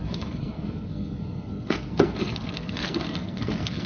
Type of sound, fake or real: fake